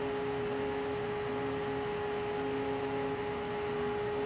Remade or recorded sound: recorded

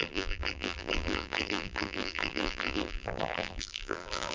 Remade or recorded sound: remade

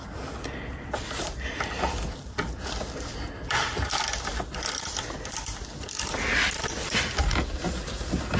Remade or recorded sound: recorded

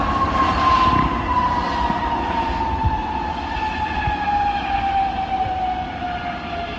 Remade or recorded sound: recorded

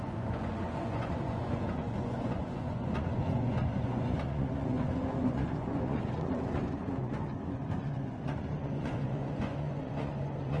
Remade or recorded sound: remade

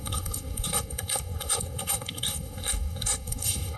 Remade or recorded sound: remade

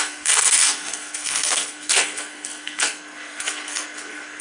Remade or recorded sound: remade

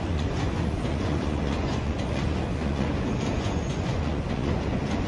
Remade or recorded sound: remade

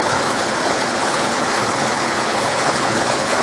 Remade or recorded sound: remade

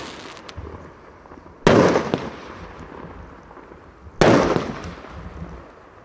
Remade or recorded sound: recorded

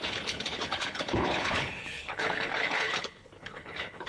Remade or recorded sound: remade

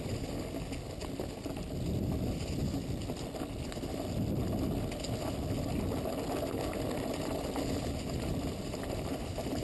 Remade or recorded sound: recorded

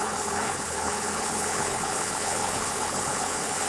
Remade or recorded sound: remade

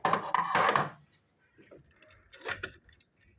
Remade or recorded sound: recorded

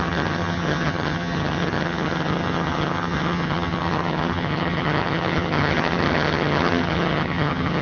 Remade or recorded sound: remade